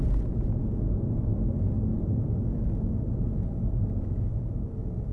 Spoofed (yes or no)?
no